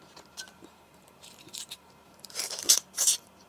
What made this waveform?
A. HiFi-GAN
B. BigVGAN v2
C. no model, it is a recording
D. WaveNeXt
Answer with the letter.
B